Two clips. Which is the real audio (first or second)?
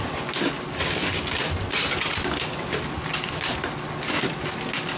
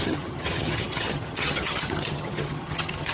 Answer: first